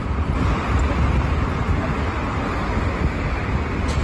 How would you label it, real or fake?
real